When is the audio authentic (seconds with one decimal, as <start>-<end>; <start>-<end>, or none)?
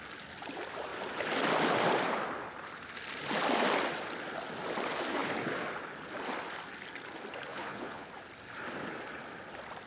0.0-7.5; 8.1-9.9